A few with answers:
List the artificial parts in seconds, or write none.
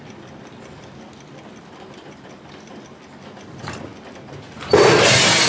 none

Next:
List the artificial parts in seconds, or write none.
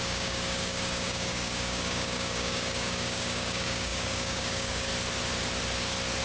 0.0-4.9 (codec, DAC)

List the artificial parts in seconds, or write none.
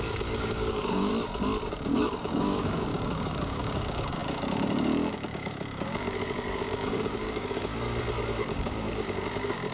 0.0-1.1 (codec, DAC); 1.7-7.7; 8.4-9.7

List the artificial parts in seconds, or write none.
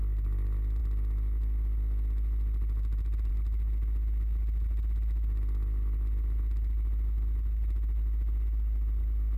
none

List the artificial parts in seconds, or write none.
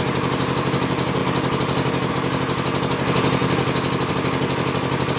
none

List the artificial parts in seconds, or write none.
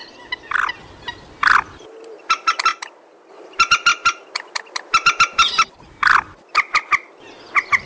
none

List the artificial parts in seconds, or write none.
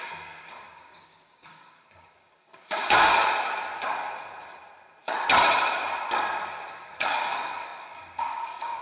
0.0-3.1 (codec, DAC); 6.7-8.8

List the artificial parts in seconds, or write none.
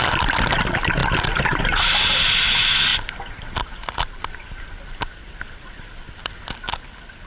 none